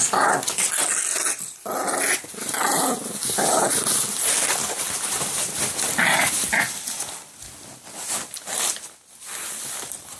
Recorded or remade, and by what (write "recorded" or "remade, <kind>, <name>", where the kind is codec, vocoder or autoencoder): recorded